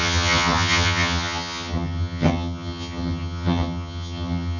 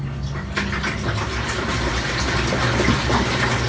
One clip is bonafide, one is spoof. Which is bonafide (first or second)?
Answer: second